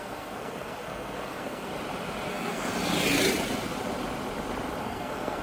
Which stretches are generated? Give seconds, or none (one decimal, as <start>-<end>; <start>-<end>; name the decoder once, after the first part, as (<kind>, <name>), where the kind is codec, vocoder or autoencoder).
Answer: 0.0-1.7 (codec, SNAC); 2.3-2.7; 4.8-5.4

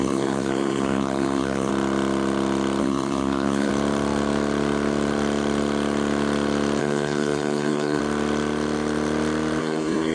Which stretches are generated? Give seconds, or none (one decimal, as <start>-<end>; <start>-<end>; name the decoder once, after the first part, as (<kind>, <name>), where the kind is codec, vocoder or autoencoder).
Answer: 0.0-1.7 (codec, SNAC); 2.8-3.7; 6.8-8.0; 9.6-10.1